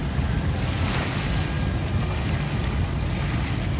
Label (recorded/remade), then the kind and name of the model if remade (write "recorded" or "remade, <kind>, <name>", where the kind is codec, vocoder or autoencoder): recorded